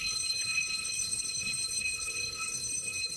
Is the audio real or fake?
fake